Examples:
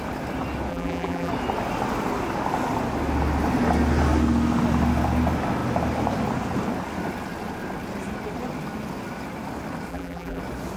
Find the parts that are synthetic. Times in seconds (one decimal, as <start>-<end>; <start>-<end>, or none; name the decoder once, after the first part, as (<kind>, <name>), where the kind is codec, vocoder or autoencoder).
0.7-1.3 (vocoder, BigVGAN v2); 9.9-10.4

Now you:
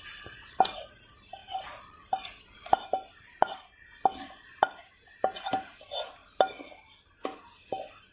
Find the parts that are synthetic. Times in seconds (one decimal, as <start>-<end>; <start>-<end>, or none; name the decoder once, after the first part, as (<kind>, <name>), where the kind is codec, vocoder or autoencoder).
none

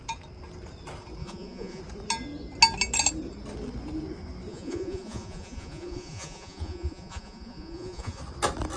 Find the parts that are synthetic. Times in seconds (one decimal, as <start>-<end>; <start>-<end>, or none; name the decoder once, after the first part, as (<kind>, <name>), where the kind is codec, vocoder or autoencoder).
1.2-1.8 (vocoder, Vocos); 4.5-8.2

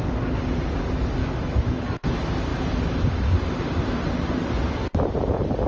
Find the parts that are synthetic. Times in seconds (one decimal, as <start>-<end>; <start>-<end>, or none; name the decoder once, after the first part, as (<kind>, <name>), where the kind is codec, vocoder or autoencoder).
1.2-2.1 (autoencoder, DAC-VAE)

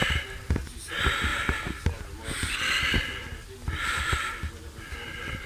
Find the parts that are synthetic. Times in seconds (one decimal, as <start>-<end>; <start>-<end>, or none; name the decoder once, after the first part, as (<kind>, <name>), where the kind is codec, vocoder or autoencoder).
none